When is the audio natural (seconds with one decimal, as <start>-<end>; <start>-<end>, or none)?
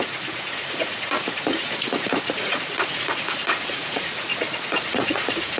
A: 4.3-4.8